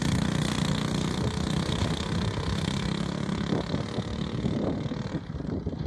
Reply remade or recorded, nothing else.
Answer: recorded